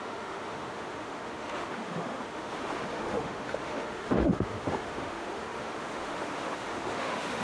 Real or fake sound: fake